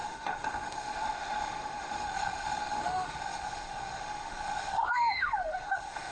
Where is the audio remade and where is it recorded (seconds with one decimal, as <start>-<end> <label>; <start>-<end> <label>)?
0.0-6.1 remade